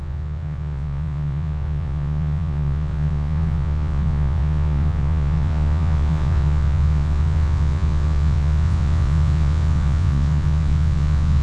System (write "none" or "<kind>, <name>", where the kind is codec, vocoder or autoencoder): vocoder, Vocos